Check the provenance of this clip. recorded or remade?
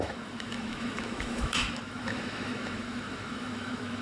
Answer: remade